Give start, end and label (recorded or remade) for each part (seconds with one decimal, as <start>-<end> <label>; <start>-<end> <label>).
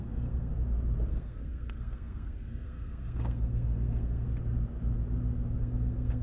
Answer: 0.0-0.5 remade; 0.5-1.1 recorded; 1.1-4.3 remade; 4.3-5.6 recorded; 5.6-6.2 remade